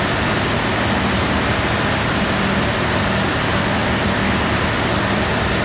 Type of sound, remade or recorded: recorded